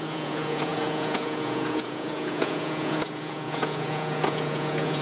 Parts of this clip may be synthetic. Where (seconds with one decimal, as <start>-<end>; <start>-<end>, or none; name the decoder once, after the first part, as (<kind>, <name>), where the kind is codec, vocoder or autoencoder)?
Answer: 0.0-5.0 (vocoder, Vocos)